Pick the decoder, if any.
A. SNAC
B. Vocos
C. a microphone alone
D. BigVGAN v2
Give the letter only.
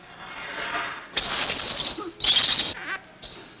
C